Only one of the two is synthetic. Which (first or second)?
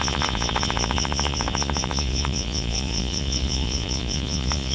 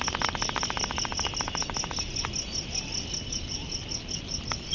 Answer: first